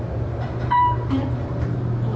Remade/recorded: remade